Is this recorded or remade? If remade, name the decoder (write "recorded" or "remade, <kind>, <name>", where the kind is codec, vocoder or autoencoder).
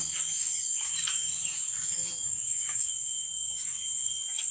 remade, codec, DAC